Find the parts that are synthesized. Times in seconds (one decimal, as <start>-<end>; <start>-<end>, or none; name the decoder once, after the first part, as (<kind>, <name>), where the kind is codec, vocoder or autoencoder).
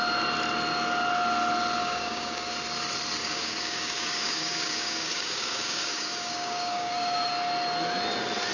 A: 1.8-2.5 (codec, DAC); 3.2-7.3